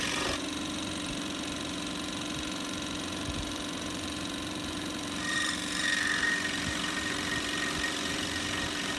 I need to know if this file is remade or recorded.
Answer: remade